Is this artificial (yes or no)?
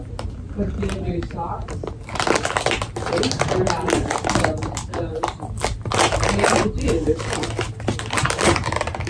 no